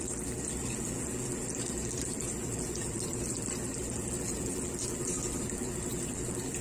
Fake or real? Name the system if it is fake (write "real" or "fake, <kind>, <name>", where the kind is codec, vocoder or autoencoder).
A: fake, vocoder, BigVGAN v2